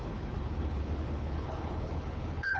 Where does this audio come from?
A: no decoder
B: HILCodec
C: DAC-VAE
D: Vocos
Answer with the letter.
B